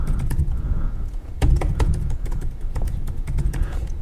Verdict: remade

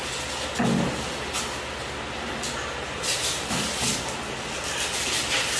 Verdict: recorded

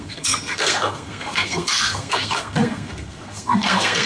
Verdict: remade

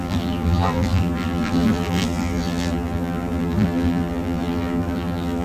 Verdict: remade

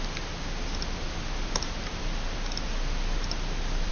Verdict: recorded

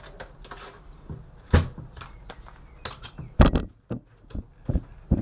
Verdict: recorded